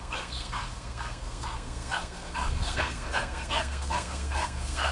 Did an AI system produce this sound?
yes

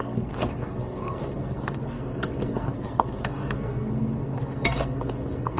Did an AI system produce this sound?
yes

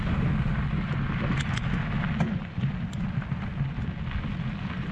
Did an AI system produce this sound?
no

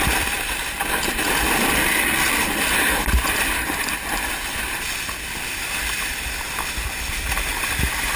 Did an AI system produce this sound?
no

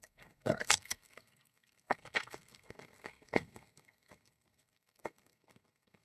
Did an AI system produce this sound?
yes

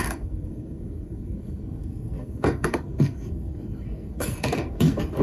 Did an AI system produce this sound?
yes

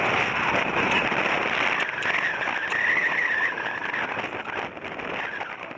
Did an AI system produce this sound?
no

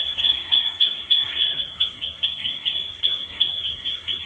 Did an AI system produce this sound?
yes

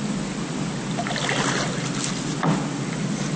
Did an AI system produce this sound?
no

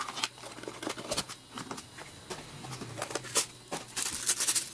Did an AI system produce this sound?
no